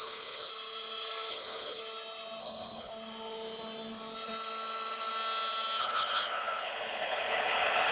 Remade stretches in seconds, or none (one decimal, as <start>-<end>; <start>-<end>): 0.0-0.5; 1.3-1.8; 2.4-2.9; 5.8-7.9